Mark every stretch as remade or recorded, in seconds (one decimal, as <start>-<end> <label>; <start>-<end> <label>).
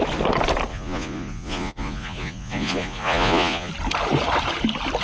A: 0.0-0.7 recorded; 0.7-3.7 remade; 3.7-5.0 recorded